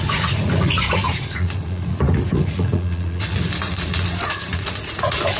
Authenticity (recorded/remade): remade